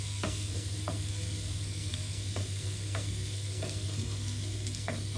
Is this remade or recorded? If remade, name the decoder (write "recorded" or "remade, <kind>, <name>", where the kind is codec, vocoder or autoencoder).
remade, codec, SNAC